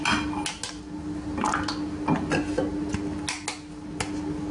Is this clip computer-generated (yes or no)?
no